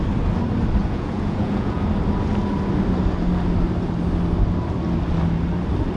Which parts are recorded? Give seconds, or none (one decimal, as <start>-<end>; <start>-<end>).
0.0-0.8; 1.8-6.0